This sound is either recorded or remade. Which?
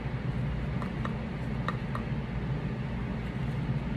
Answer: recorded